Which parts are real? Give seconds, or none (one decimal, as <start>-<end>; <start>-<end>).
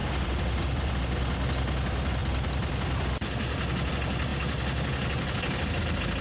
1.0-2.2; 3.9-6.2